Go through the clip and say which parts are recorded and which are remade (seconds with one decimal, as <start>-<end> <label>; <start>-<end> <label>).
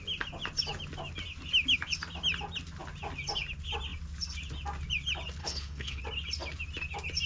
0.0-5.4 recorded; 5.4-6.0 remade; 6.0-7.3 recorded